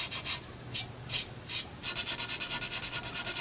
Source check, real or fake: real